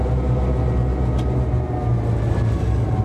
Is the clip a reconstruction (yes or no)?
no